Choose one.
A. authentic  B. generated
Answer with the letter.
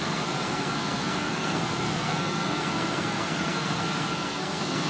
B